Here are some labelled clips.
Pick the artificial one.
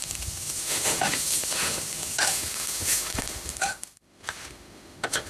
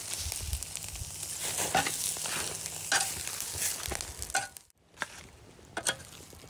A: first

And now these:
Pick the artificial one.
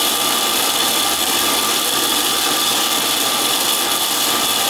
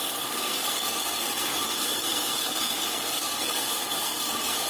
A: second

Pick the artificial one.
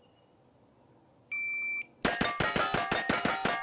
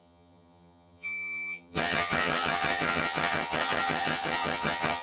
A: second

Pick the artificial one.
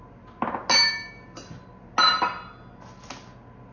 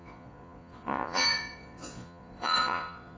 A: second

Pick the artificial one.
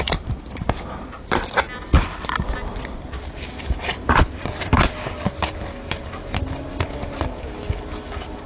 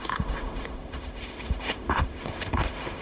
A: second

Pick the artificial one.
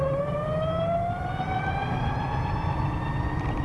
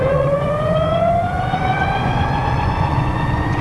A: second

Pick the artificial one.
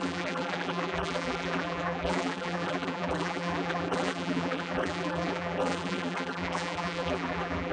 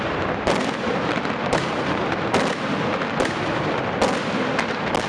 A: first